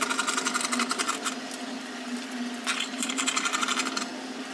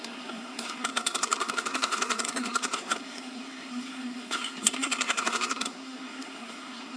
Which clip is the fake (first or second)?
second